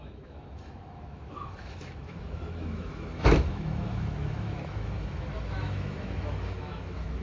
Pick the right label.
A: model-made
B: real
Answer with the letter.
A